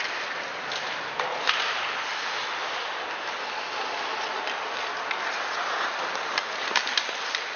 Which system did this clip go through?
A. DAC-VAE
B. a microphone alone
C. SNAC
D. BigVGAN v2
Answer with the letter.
B